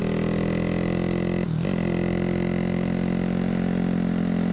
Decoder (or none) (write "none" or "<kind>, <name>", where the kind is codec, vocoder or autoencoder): none